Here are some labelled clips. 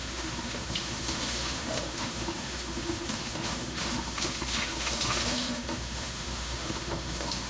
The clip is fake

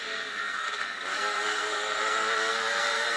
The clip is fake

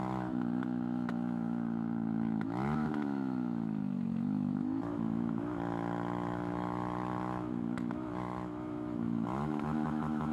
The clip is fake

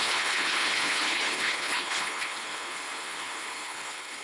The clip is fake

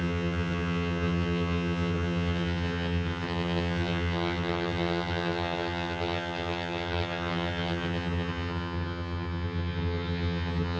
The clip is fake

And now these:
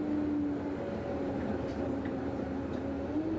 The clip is real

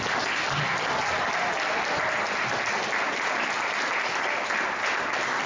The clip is real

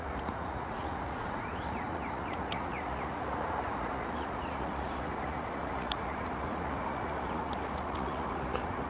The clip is fake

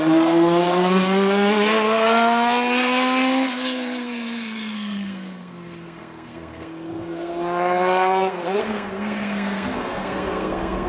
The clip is fake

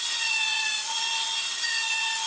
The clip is fake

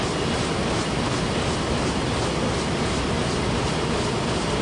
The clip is real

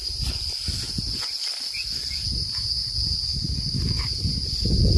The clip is real